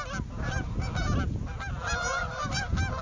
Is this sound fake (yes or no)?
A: no